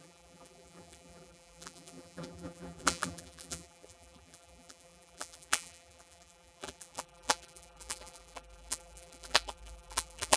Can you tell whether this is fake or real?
fake